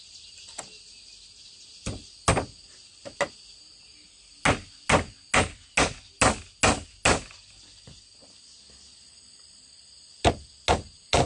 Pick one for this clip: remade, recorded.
recorded